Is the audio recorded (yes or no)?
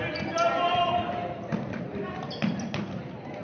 yes